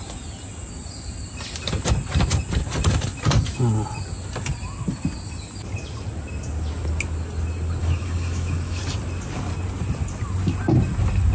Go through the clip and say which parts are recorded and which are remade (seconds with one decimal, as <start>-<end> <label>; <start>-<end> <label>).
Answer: 0.0-7.8 recorded; 7.8-8.8 remade; 8.8-11.3 recorded